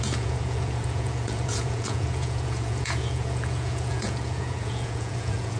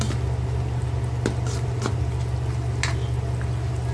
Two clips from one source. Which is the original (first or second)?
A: second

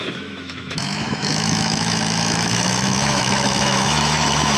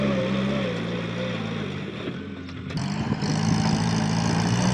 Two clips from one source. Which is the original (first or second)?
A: second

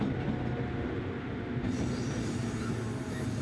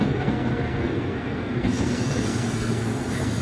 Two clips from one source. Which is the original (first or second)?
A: first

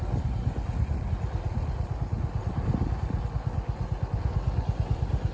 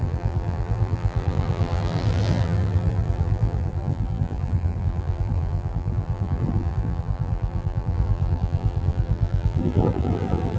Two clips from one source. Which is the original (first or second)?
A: first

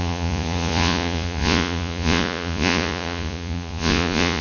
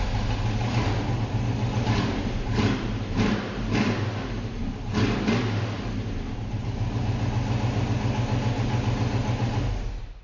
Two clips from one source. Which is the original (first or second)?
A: second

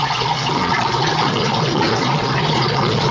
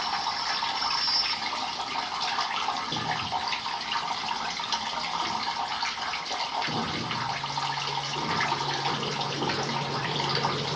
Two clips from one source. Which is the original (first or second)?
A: second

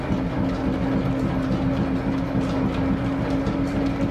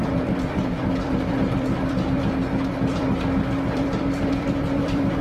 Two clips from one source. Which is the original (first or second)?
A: first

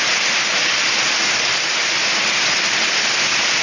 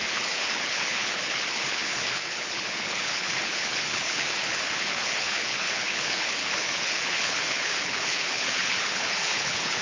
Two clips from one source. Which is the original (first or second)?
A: first